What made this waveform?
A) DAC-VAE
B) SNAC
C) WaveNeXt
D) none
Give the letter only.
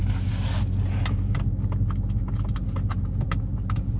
D